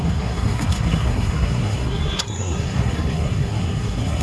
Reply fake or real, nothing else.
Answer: fake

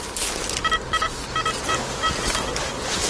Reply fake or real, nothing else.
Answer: real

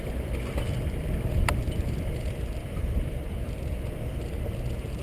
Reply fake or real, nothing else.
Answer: real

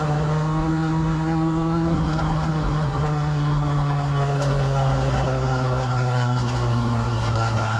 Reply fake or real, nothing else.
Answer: fake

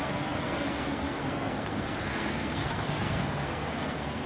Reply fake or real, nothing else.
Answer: fake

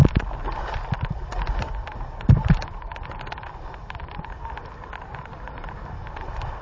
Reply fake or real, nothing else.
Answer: real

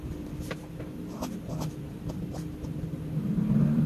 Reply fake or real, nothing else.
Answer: real